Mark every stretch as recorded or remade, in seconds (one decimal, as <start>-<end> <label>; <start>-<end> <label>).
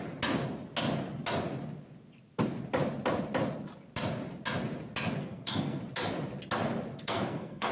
0.0-5.2 recorded; 5.2-5.8 remade; 5.8-6.9 recorded; 6.9-7.7 remade